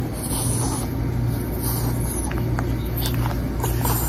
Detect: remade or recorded recorded